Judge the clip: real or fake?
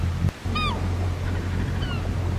real